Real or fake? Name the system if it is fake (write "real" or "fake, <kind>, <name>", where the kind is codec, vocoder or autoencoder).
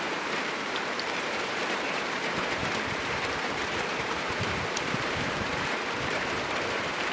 fake, vocoder, BigVGAN v2